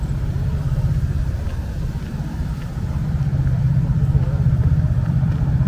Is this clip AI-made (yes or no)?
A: yes